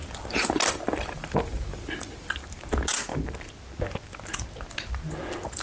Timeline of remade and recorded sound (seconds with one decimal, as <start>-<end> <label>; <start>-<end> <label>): 0.0-5.6 recorded